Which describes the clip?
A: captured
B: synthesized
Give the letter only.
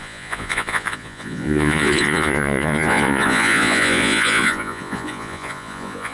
B